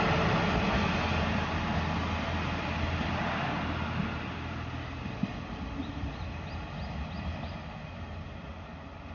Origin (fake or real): real